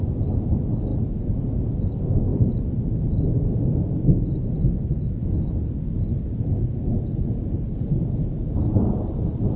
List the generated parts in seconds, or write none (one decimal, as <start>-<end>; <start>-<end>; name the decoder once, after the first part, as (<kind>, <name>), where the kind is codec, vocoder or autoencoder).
none